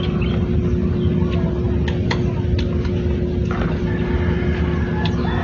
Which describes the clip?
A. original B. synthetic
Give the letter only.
A